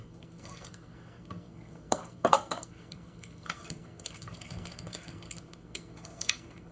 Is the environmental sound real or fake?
fake